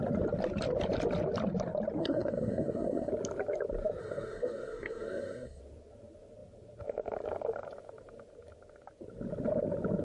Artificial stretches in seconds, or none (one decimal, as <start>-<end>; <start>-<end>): 2.0-3.1; 4.0-5.6